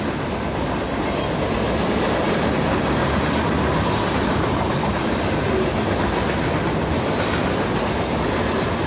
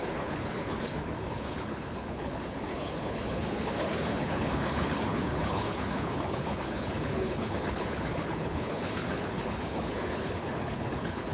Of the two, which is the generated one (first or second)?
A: second